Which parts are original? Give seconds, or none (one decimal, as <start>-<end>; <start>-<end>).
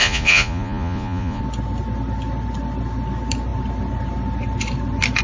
1.4-5.2